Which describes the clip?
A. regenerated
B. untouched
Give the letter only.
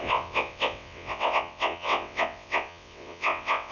A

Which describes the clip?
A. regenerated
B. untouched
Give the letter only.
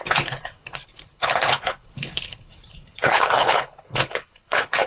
A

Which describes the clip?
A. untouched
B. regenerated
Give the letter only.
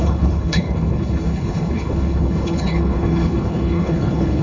B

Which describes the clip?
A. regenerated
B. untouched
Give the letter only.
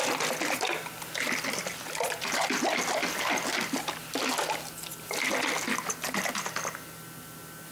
B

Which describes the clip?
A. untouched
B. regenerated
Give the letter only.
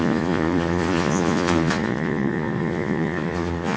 B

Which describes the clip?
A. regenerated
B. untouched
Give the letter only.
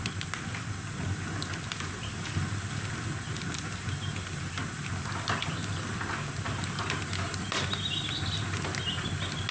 B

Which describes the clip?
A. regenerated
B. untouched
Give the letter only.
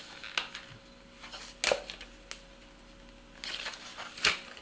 B